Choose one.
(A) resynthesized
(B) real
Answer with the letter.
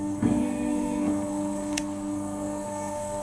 A